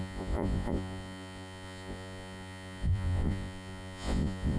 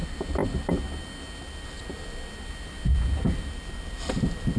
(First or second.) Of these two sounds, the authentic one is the second